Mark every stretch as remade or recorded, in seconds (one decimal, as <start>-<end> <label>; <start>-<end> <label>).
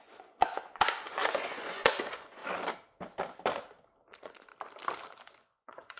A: 0.0-2.4 remade; 2.4-4.1 recorded; 4.1-4.5 remade; 4.5-5.2 recorded; 5.2-6.0 remade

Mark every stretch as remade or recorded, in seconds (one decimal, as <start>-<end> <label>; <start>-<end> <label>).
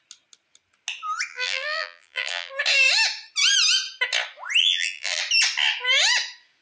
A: 0.0-1.3 recorded; 1.3-2.5 remade; 2.5-4.6 recorded; 4.6-5.2 remade; 5.2-6.6 recorded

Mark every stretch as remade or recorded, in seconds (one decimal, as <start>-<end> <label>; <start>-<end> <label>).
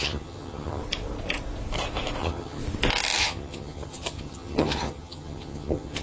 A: 0.0-0.8 remade; 0.8-2.2 recorded; 2.2-2.6 remade; 2.6-3.2 recorded; 3.2-6.0 remade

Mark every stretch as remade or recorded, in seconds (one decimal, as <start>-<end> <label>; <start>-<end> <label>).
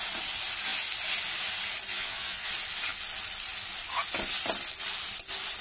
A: 0.0-1.9 recorded; 1.9-2.5 remade; 2.5-5.6 recorded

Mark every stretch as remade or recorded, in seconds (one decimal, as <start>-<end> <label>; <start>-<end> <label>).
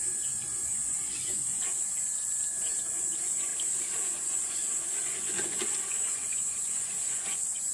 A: 0.0-3.5 remade; 3.5-4.1 recorded; 4.1-7.7 remade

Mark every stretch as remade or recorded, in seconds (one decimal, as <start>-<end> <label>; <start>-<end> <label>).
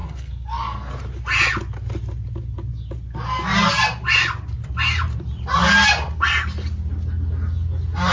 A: 0.0-0.9 remade; 0.9-8.1 recorded